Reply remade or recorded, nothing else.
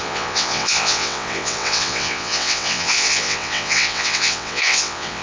remade